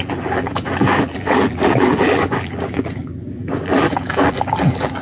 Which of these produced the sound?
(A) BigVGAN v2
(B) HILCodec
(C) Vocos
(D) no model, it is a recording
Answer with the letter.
A